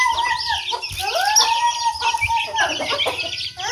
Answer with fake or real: real